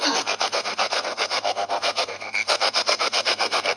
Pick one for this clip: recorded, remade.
remade